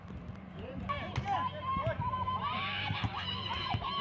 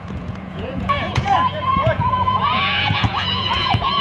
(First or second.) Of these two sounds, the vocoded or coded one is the second